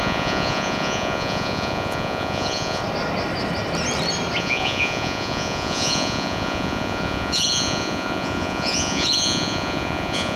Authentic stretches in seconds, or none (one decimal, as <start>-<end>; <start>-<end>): 2.8-4.4